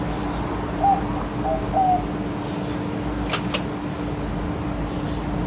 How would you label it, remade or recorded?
recorded